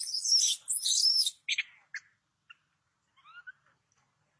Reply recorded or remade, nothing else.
recorded